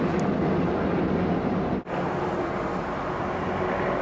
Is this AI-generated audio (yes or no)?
no